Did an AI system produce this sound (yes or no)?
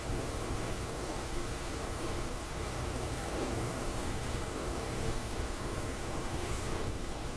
yes